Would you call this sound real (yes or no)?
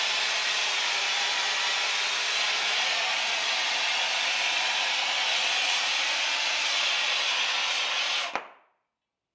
yes